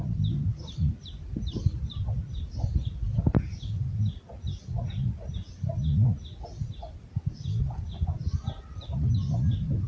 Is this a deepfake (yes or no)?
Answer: no